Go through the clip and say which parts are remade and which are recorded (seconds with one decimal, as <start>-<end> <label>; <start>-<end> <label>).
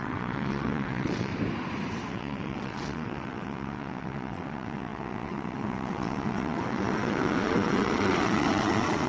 0.0-1.3 remade; 1.3-2.1 recorded; 2.1-9.1 remade